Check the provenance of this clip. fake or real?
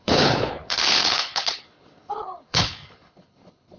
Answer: fake